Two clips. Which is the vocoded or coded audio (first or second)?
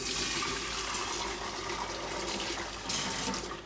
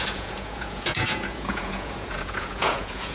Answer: second